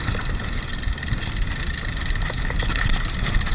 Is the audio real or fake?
real